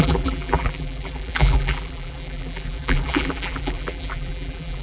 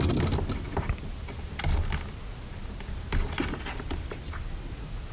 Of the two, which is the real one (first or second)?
second